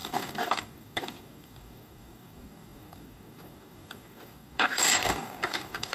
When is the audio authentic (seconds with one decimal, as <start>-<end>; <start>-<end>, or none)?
none